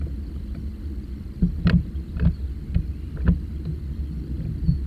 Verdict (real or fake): real